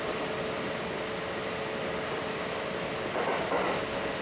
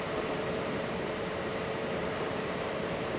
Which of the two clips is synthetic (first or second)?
second